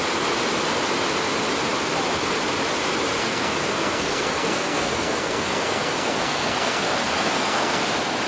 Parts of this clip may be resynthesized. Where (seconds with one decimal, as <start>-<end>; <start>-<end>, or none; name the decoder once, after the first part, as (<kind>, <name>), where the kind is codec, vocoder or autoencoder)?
3.2-7.8 (codec, SNAC)